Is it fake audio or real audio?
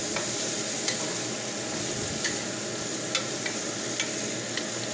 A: real